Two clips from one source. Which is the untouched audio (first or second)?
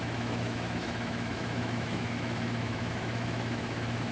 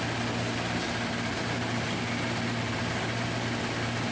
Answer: second